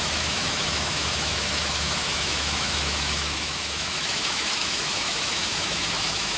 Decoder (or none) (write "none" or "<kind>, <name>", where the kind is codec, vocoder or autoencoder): autoencoder, DAC-VAE